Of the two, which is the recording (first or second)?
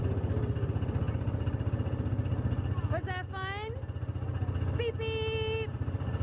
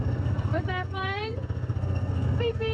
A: first